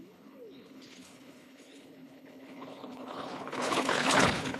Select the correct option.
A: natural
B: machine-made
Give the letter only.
B